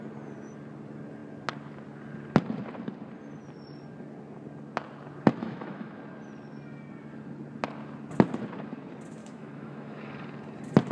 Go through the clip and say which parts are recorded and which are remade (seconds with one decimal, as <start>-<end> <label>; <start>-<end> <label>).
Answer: 0.0-5.4 recorded; 5.4-6.0 remade; 6.0-9.2 recorded; 9.2-10.0 remade; 10.0-10.9 recorded